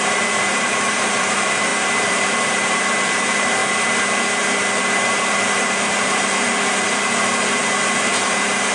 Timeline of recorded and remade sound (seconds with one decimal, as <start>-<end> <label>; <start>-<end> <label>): 0.0-3.6 remade; 3.6-4.8 recorded; 4.8-7.6 remade; 7.6-8.1 recorded; 8.1-8.7 remade